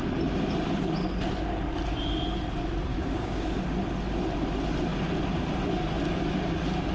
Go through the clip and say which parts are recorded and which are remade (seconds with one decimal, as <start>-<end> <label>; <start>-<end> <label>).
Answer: 0.0-2.9 recorded; 2.9-3.6 remade; 3.6-6.9 recorded